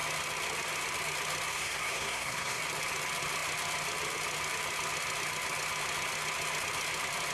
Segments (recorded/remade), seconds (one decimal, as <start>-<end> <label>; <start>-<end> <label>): 0.0-1.5 recorded; 1.5-2.6 remade; 2.6-7.3 recorded